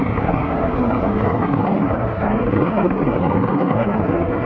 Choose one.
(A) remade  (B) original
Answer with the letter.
A